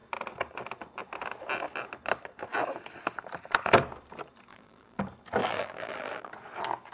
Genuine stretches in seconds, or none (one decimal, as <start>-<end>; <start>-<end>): 0.0-4.5; 5.0-5.4; 6.3-6.9